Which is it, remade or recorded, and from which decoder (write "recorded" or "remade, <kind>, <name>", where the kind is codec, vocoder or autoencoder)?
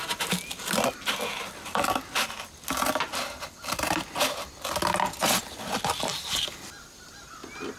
recorded